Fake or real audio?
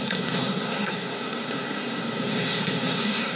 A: fake